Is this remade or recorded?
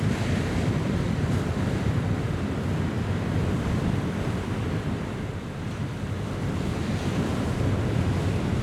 remade